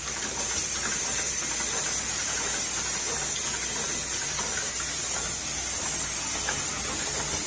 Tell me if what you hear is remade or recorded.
recorded